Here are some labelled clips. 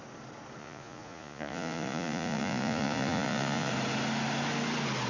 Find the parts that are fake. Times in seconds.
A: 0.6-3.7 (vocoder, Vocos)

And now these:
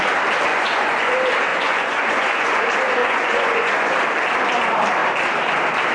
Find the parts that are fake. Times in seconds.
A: 0.5-1.1 (vocoder, Vocos); 1.5-2.6; 3.0-3.9

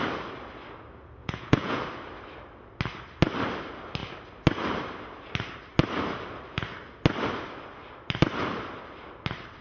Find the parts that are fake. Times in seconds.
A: 1.2-1.8 (vocoder, Vocos)

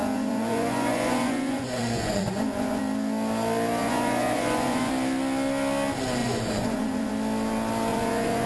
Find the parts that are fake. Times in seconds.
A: 0.0-2.8 (vocoder, Vocos); 3.8-4.9; 6.2-7.1; 7.9-8.5

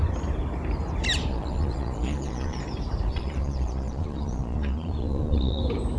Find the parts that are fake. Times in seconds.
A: 1.3-2.6 (vocoder, Vocos); 3.1-5.6

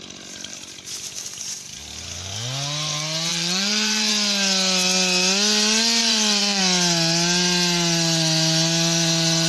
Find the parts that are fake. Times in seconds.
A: 3.3-4.1 (vocoder, Vocos); 6.0-6.6

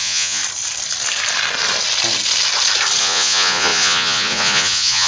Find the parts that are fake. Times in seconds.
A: 0.0-0.4 (vocoder, Vocos); 3.0-5.1